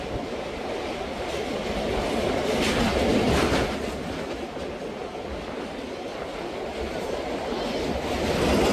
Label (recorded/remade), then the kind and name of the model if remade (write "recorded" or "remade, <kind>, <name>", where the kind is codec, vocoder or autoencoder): recorded